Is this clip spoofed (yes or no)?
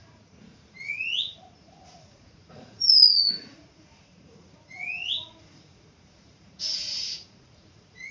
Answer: yes